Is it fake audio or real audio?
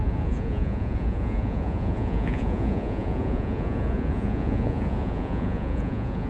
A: fake